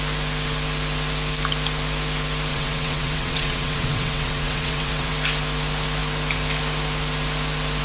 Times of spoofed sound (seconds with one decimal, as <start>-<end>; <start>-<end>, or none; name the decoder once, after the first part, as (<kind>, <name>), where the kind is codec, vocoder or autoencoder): 2.5-5.1 (vocoder, WaveNeXt)